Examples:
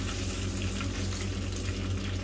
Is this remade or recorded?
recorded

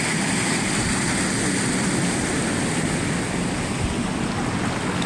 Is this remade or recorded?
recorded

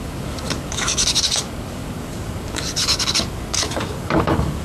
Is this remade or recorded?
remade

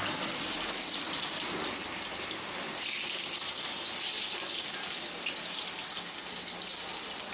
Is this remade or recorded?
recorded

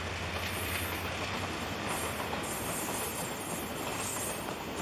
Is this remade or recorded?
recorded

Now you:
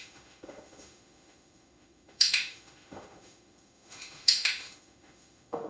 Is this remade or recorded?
remade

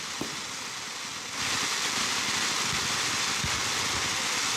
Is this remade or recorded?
recorded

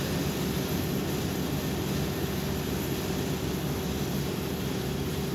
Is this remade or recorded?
recorded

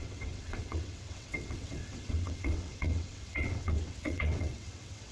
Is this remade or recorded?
remade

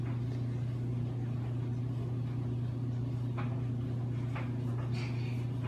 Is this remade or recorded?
recorded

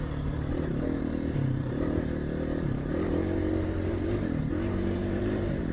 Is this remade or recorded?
remade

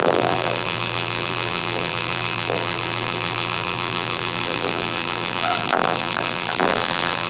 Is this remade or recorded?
remade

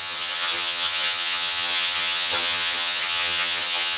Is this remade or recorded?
remade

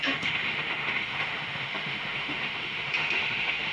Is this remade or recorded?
remade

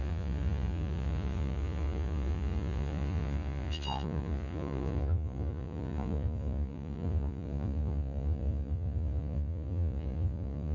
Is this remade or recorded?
remade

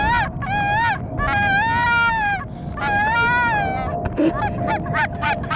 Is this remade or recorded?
recorded